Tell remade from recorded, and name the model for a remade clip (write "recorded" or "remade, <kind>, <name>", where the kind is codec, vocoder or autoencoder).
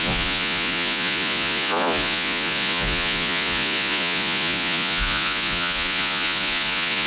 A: remade, vocoder, Vocos